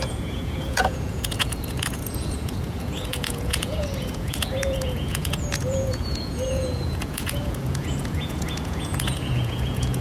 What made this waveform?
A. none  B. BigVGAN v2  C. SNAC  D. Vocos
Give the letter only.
D